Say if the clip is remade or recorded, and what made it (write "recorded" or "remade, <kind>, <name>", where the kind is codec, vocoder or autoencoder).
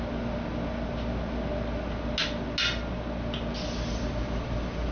recorded